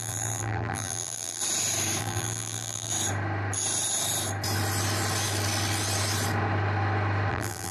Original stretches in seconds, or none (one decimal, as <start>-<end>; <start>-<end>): 1.4-2.0; 2.9-7.3